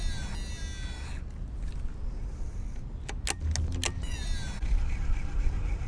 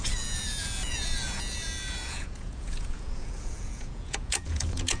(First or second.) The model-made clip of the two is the second